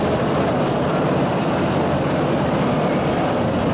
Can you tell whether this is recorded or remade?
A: remade